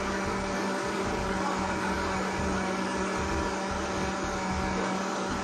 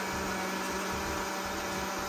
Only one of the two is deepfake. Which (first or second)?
first